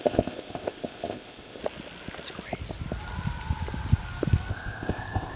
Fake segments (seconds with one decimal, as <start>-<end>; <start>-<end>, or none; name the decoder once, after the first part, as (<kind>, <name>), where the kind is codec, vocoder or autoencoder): 0.0-1.6 (codec, ZipCodec); 4.5-5.4